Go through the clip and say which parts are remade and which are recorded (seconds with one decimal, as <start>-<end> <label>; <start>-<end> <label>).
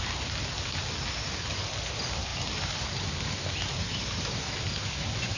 0.0-2.3 recorded; 2.3-5.4 remade